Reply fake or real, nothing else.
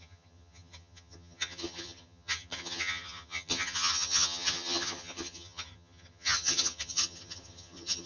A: fake